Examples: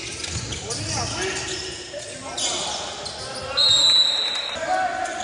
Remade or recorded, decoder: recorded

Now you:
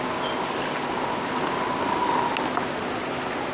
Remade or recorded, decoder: recorded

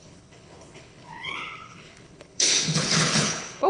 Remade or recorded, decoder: remade, codec, HILCodec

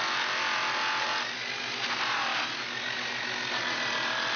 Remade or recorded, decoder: recorded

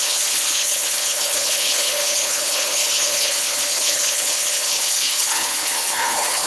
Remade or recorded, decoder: remade, codec, HILCodec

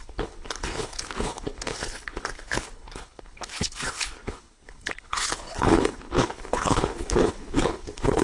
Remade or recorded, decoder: remade, codec, HILCodec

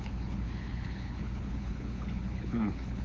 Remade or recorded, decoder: remade, codec, HILCodec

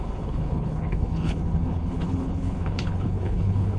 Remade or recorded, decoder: remade, codec, HILCodec